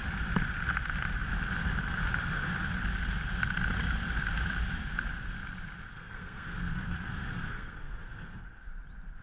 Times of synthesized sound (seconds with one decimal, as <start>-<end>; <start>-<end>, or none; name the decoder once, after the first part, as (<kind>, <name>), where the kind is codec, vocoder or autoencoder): 5.9-8.7 (codec, SNAC)